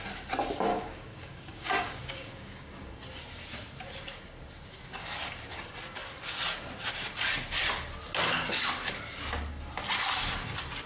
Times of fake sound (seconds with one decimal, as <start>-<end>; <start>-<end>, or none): 0.7-2.8

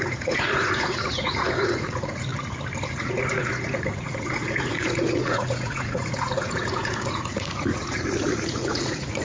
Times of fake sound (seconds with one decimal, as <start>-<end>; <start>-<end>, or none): 0.0-2.3; 2.8-9.2

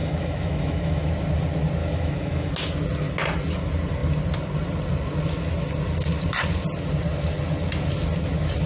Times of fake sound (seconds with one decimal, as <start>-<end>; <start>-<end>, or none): 0.0-1.1; 1.8-2.5

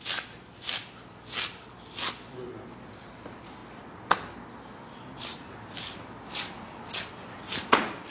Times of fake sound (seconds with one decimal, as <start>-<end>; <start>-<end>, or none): none